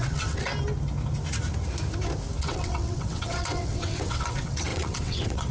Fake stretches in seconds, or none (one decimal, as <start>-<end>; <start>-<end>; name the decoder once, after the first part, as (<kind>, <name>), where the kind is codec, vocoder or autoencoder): 0.0-0.5 (vocoder, WaveNeXt); 2.4-5.5